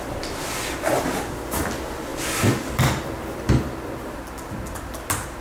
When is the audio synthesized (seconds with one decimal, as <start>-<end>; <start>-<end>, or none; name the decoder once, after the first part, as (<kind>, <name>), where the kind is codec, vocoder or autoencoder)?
2.1-3.5 (vocoder, BigVGAN v2)